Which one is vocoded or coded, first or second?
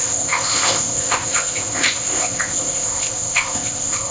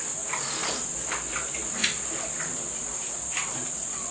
first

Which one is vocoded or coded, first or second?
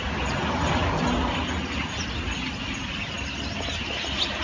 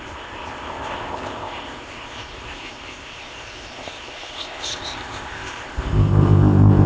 second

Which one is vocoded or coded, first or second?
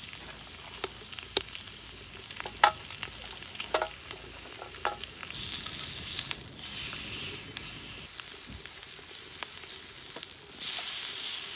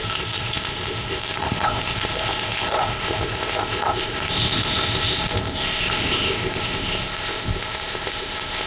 second